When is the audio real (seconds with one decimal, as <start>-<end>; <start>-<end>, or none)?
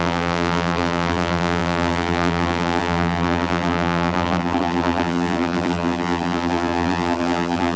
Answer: none